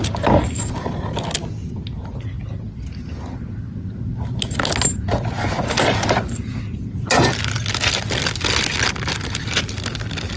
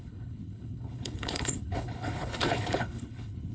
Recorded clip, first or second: first